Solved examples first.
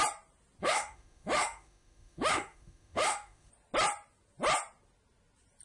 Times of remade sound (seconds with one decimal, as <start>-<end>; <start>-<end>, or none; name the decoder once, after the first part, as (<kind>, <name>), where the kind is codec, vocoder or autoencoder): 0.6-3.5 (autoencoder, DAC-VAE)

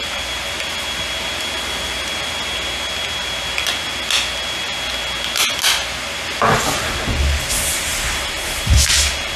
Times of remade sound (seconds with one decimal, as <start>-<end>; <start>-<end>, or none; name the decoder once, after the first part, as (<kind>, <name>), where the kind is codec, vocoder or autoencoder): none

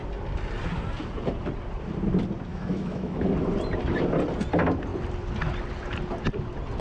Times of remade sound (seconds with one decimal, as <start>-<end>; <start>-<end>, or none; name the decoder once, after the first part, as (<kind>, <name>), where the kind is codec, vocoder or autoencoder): 2.5-3.2 (autoencoder, DAC-VAE)